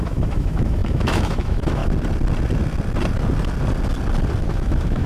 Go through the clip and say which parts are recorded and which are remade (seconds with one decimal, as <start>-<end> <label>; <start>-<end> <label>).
0.0-1.8 remade; 1.8-4.4 recorded; 4.4-5.1 remade